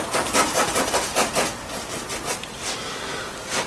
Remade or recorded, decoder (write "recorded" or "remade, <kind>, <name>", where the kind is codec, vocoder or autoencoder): recorded